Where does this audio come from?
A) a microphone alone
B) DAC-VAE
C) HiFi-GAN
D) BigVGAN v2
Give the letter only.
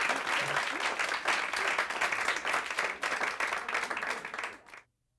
A